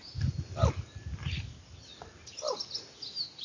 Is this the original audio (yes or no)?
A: yes